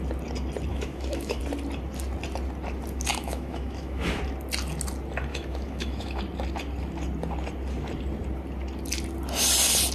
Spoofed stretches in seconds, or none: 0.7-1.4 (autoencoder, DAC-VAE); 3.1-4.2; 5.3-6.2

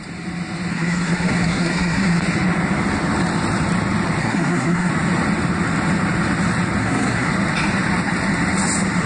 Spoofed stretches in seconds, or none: 0.7-2.2 (codec, SNAC); 4.2-4.9; 6.8-7.3

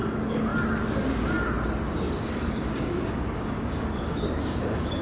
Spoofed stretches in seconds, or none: 1.9-5.0 (codec, DAC)

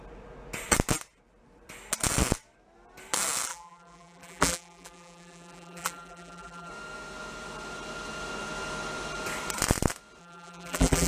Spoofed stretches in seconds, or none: 3.5-6.7 (vocoder, BigVGAN v2); 10.2-11.1

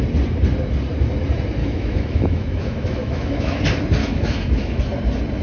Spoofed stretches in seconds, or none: 1.6-3.6 (autoencoder, DAC-VAE); 4.0-4.8

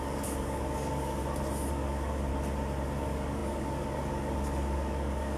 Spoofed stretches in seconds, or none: 0.0-1.2 (codec, DAC); 1.7-2.3; 3.0-5.4

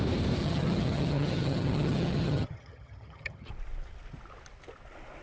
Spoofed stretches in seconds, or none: 0.4-3.5 (vocoder, HiFi-GAN)

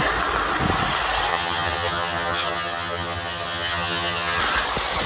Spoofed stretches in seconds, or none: 1.3-4.4 (vocoder, HiFi-GAN)